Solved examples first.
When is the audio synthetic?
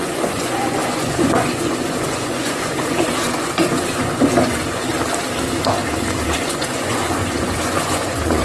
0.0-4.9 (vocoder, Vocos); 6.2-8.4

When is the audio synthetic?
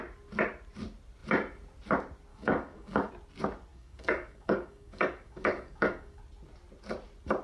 2.3-3.1 (codec, DAC); 3.7-6.2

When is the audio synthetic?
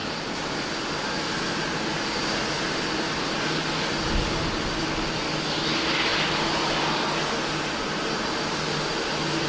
6.1-7.2 (vocoder, BigVGAN v2)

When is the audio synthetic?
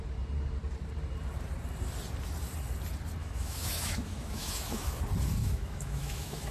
3.2-5.0 (autoencoder, DAC-VAE); 5.4-6.5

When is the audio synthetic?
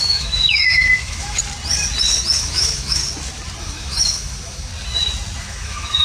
0.0-1.4 (autoencoder, DAC-VAE); 2.4-3.0; 3.6-4.7; 5.4-6.0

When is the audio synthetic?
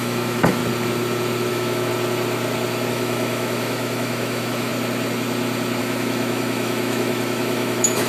0.0-0.6 (autoencoder, DAC-VAE); 1.5-1.9; 2.9-4.7; 5.8-8.1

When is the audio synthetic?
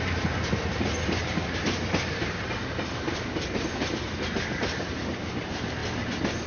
none